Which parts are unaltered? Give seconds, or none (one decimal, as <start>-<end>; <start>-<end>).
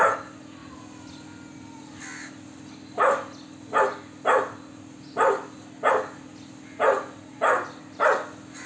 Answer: 0.0-8.7